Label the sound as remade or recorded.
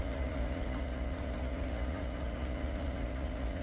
remade